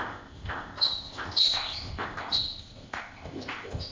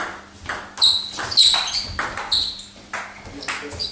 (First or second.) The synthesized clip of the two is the first